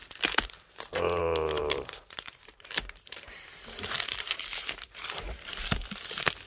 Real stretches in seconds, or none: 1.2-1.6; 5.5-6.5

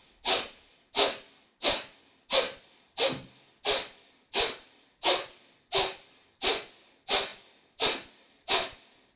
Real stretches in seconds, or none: 0.0-0.7